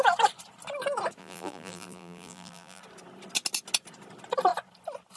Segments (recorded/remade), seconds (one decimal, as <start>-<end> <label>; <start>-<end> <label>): 0.0-1.2 recorded; 1.2-2.8 remade; 2.8-5.2 recorded